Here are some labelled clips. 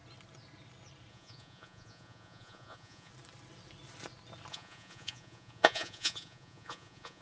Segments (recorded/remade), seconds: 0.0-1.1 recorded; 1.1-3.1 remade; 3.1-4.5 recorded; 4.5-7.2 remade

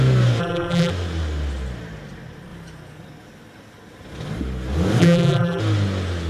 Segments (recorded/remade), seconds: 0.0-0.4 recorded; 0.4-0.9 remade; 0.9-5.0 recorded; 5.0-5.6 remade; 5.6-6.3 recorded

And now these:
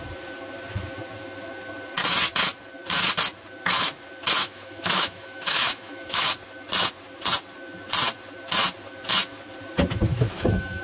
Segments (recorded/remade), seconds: 0.0-4.4 recorded; 4.4-6.3 remade; 6.3-10.1 recorded; 10.1-10.8 remade

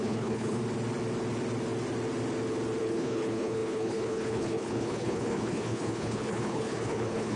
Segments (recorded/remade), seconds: 0.0-0.6 remade; 0.6-2.8 recorded; 2.8-7.4 remade

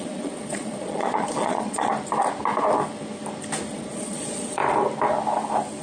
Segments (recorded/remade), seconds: 0.0-1.9 remade; 1.9-3.7 recorded; 3.7-4.6 remade; 4.6-5.8 recorded

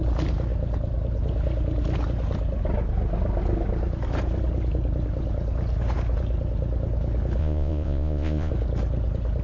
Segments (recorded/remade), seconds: 0.0-7.4 recorded; 7.4-8.5 remade; 8.5-9.4 recorded